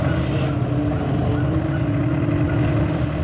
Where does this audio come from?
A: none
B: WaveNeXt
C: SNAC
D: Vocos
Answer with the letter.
A